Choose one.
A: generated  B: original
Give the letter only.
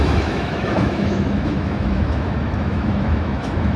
A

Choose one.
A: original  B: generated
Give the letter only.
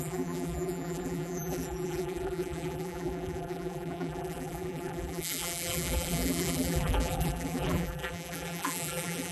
B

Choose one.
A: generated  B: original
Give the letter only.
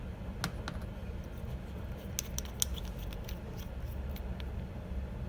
B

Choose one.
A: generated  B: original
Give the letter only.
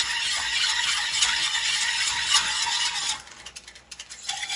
A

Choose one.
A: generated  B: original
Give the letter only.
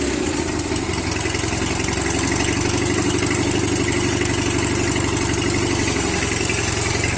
B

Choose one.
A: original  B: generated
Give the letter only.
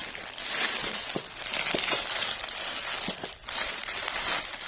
A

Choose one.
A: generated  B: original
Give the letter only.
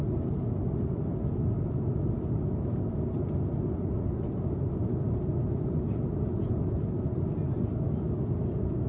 B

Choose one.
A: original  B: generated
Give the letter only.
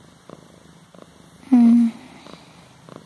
A